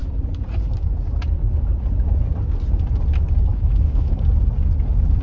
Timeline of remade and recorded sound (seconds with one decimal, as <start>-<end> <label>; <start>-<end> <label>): 0.0-3.5 recorded; 3.5-4.2 remade; 4.2-5.2 recorded